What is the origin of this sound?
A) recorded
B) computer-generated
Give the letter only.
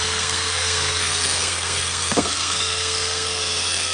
B